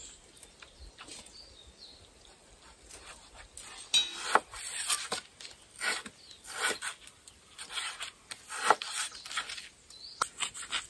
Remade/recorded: recorded